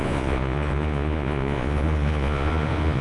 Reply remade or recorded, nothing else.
remade